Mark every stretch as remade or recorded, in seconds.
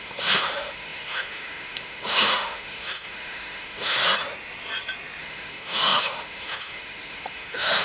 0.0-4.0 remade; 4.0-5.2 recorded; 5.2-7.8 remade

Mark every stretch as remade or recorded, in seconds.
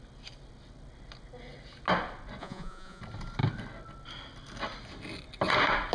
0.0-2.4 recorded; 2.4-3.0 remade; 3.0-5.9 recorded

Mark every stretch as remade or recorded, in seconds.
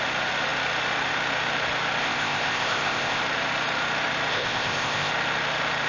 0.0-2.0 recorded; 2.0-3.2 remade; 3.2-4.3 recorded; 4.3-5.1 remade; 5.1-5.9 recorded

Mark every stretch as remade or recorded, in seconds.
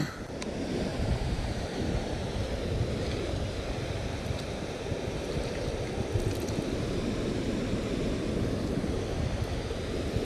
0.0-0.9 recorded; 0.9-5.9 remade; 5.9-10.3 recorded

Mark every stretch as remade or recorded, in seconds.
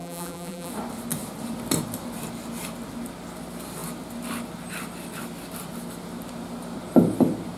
0.0-0.7 remade; 0.7-7.6 recorded